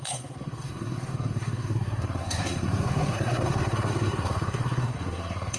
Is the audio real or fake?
fake